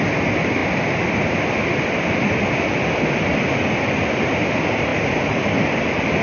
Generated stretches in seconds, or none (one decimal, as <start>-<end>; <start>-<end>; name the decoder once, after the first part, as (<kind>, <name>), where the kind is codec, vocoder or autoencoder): none